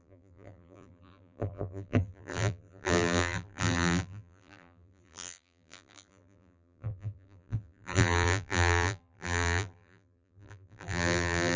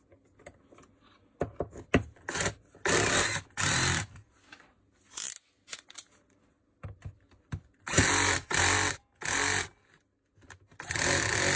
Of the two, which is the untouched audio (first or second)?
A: second